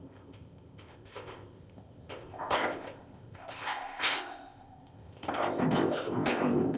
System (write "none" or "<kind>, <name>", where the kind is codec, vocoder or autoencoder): codec, ZipCodec